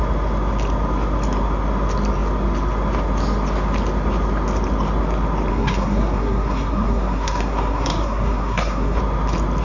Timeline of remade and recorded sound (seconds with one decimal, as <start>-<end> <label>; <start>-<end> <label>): 0.0-5.5 recorded; 5.5-9.0 remade; 9.0-9.6 recorded